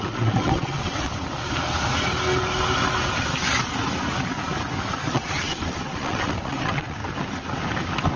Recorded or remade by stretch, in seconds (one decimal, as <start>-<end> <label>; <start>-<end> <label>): 0.0-1.2 remade; 1.2-5.1 recorded; 5.1-7.0 remade; 7.0-8.2 recorded